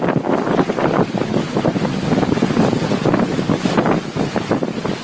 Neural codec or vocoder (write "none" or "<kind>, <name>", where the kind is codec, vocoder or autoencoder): none